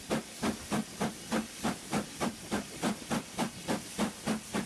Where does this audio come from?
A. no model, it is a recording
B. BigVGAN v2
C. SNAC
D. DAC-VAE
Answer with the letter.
B